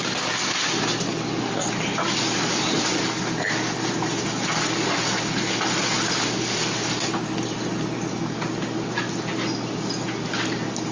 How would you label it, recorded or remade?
recorded